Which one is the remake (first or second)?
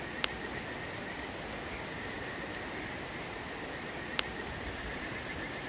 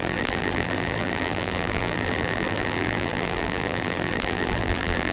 second